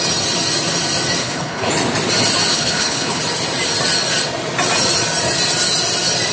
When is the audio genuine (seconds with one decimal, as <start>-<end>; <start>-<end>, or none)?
0.0-1.2; 1.7-2.5; 3.2-6.3